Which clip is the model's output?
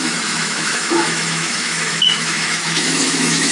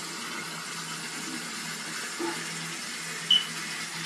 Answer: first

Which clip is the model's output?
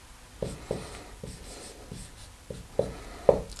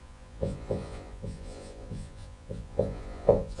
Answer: second